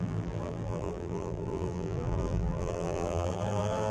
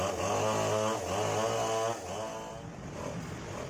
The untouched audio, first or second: second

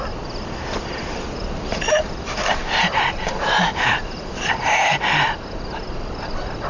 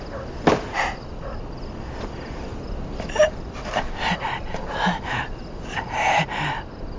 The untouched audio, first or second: second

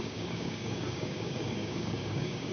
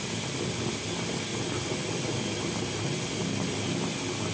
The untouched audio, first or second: second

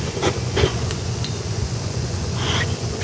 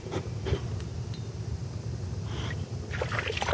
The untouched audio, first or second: second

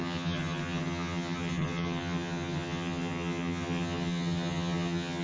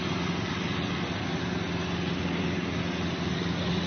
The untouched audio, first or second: second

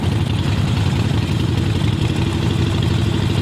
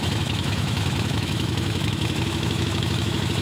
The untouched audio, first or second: first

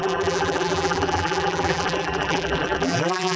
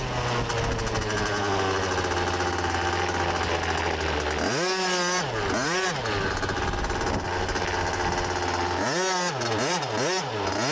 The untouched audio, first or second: second